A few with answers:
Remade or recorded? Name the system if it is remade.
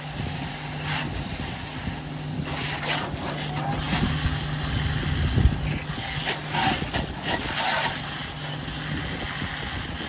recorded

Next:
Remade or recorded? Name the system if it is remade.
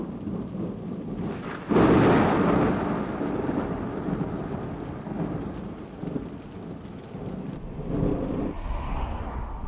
recorded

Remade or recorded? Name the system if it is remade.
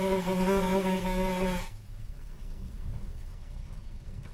remade, codec, SNAC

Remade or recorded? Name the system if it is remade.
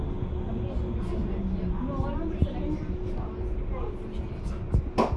recorded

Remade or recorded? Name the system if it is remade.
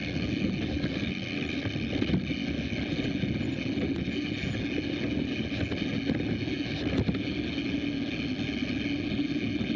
recorded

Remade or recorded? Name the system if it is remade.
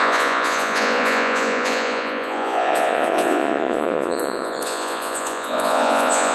remade, vocoder, Vocos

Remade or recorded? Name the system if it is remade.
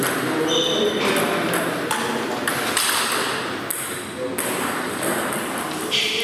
recorded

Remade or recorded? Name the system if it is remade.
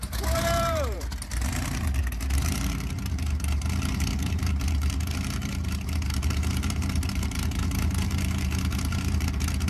remade, vocoder, BigVGAN v2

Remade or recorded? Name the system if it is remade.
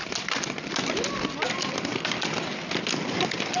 recorded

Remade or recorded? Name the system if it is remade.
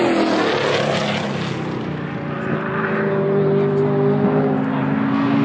recorded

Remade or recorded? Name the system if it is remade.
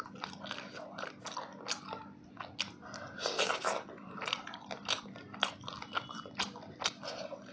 recorded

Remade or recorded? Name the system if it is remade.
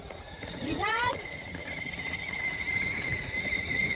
remade, vocoder, Vocos